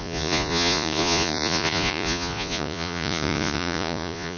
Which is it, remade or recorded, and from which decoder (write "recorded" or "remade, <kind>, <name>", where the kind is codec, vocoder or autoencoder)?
remade, vocoder, Vocos